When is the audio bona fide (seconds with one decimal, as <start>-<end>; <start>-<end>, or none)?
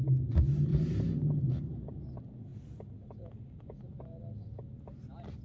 0.0-0.7; 1.5-5.4